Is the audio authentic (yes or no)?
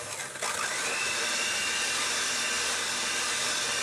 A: yes